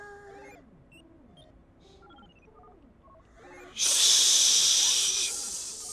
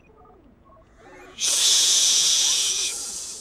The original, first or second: first